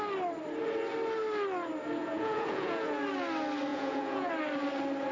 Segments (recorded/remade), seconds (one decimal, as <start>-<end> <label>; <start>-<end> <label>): 0.0-2.0 recorded; 2.0-3.0 remade; 3.0-3.7 recorded; 3.7-4.3 remade; 4.3-5.1 recorded